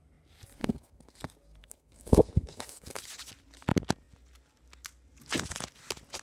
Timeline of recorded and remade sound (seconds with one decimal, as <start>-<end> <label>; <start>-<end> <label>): 0.0-0.6 recorded; 0.6-1.2 remade; 1.2-1.6 recorded; 1.6-3.0 remade; 3.0-6.2 recorded